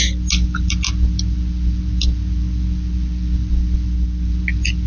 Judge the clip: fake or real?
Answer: real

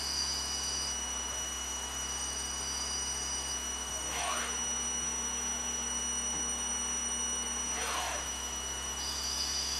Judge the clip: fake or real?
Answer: fake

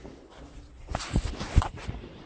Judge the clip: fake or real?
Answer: real